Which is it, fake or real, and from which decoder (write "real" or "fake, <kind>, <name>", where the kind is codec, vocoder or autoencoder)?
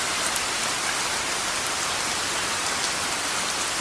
real